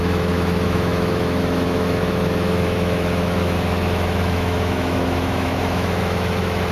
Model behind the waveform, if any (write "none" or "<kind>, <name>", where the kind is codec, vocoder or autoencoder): autoencoder, DAC-VAE